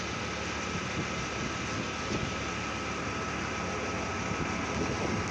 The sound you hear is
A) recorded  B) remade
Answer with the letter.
A